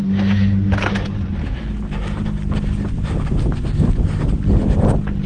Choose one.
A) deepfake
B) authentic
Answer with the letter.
B